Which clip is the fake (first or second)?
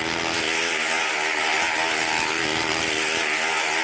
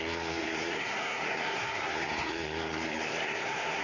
second